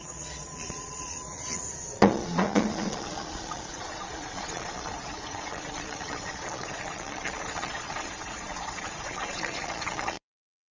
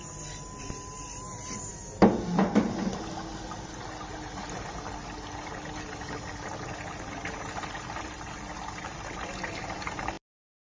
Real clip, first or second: second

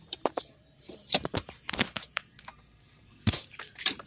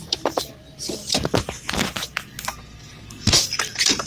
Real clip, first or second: second